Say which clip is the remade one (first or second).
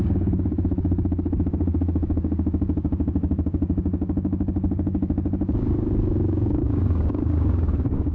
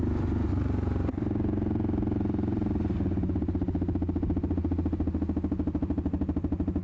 first